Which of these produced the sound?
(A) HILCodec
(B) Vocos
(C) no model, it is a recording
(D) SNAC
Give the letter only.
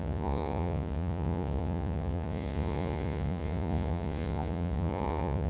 B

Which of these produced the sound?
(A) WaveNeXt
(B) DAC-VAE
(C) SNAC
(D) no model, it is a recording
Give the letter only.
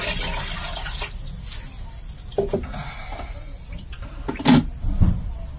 D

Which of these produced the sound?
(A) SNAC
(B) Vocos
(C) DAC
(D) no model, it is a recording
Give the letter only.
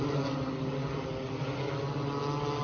D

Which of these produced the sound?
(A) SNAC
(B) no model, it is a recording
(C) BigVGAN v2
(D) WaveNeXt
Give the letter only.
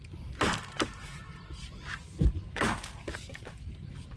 B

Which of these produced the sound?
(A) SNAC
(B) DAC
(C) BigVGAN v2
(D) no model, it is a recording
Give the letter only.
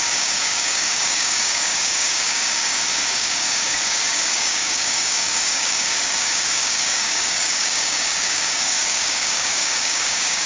B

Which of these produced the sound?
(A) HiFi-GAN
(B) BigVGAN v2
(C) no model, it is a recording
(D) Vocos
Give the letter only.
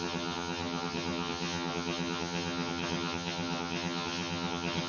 A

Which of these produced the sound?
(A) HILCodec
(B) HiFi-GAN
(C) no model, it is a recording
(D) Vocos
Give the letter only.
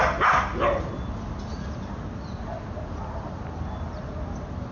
C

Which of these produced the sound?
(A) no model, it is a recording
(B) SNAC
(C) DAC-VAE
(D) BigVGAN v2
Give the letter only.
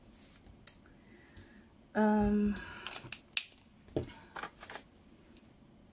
A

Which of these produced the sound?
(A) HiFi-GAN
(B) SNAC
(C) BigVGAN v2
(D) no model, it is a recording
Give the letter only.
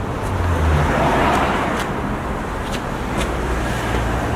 D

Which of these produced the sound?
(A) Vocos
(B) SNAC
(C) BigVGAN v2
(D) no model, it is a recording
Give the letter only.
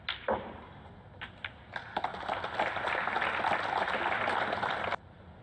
D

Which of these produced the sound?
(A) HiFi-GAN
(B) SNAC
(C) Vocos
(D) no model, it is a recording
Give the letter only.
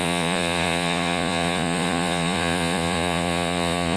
C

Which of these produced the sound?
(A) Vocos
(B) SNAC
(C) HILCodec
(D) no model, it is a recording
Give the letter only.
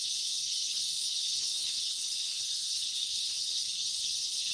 C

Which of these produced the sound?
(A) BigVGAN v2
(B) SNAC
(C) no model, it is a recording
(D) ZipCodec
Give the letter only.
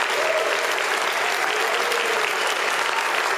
C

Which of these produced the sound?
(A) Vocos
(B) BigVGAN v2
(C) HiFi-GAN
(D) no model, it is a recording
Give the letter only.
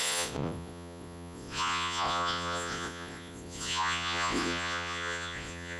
A